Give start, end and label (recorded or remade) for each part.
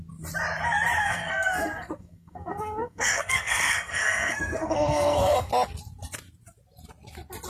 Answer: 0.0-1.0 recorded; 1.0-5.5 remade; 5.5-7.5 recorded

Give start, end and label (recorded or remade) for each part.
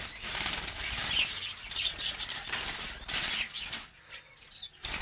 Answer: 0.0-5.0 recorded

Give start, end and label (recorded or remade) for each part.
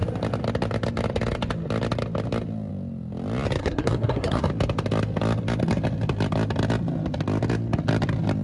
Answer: 0.0-3.6 recorded; 3.6-4.5 remade; 4.5-8.4 recorded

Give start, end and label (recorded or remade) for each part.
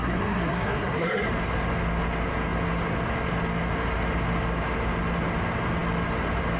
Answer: 0.0-1.3 remade; 1.3-6.6 recorded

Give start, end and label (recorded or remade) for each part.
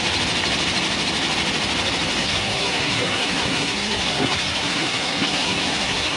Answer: 0.0-2.2 recorded; 2.2-6.2 remade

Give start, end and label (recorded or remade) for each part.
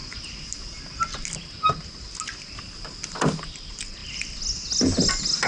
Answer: 0.0-5.5 recorded